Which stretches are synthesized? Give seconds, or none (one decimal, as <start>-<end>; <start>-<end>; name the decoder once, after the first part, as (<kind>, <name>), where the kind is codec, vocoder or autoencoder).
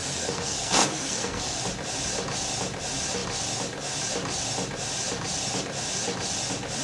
0.0-1.6 (codec, SNAC)